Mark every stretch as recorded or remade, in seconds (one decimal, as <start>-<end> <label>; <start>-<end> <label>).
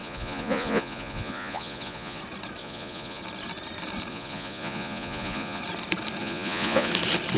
0.0-2.2 remade; 2.2-2.6 recorded; 2.6-3.2 remade; 3.2-4.1 recorded; 4.1-5.6 remade; 5.6-6.2 recorded; 6.2-6.9 remade; 6.9-7.4 recorded